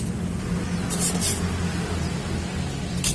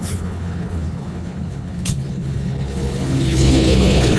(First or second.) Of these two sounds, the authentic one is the first